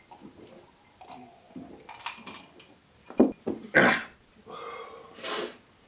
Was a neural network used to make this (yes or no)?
no